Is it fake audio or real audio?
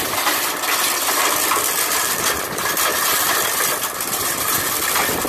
real